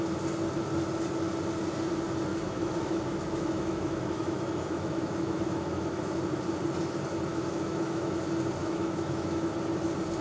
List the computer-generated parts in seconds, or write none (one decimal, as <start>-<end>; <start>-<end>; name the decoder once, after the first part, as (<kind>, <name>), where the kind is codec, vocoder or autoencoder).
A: 2.3-6.2 (autoencoder, DAC-VAE); 7.3-8.2; 8.6-9.5